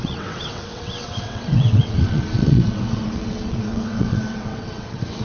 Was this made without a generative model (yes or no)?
no